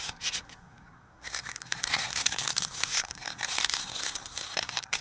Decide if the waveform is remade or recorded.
remade